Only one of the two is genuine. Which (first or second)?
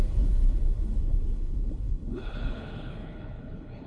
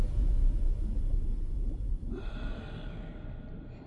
second